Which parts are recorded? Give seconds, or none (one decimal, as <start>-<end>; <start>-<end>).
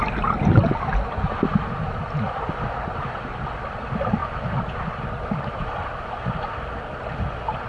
0.0-4.2; 5.0-7.7